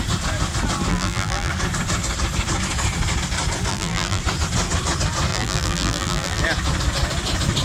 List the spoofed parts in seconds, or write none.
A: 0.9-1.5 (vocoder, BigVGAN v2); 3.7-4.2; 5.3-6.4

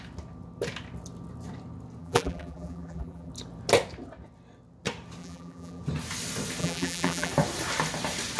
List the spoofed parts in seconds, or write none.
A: 2.0-3.3 (vocoder, BigVGAN v2); 5.2-5.8; 6.6-7.3

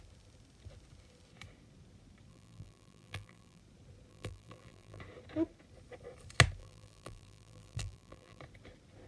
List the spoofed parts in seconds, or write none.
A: 2.3-3.6 (vocoder, BigVGAN v2); 4.1-5.0; 6.6-8.4

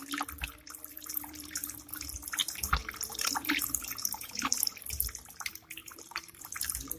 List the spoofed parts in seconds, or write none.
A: 0.9-1.9 (vocoder, BigVGAN v2); 2.4-4.6; 5.8-6.4

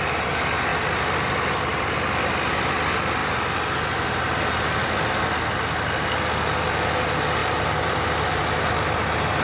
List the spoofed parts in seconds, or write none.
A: 0.7-2.3 (vocoder, BigVGAN v2); 3.2-5.0; 7.4-8.4

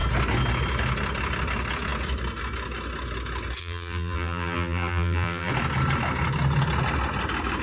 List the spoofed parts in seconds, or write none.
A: 3.6-5.5 (vocoder, BigVGAN v2)